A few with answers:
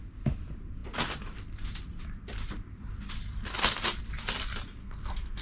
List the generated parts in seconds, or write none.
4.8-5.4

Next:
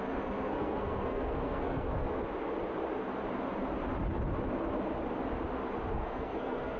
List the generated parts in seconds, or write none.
0.0-2.2; 5.9-6.8

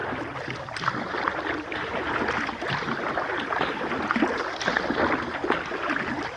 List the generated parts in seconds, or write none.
none

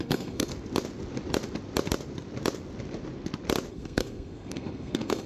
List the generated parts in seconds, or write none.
0.0-0.5; 3.7-5.3

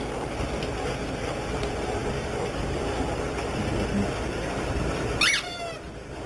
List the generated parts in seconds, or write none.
none